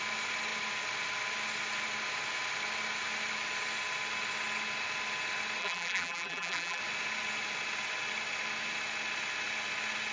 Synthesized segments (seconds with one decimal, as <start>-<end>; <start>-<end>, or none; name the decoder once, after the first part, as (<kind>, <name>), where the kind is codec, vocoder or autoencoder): 5.6-6.8 (vocoder, BigVGAN v2)